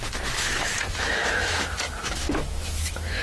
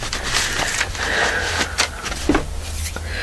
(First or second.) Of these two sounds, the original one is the second